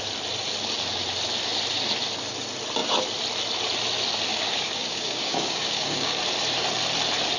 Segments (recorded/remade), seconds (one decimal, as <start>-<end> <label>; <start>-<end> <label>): 0.0-4.3 recorded; 4.3-6.2 remade; 6.2-7.4 recorded